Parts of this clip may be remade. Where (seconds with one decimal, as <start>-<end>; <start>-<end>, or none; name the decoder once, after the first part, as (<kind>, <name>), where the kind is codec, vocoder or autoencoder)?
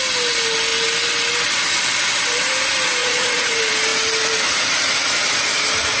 3.0-3.5 (vocoder, Vocos)